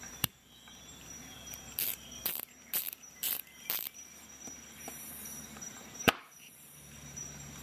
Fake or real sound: fake